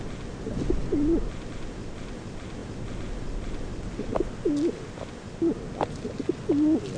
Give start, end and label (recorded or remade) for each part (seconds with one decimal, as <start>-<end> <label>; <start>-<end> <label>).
0.0-7.0 recorded